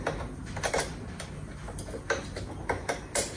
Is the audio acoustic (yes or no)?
yes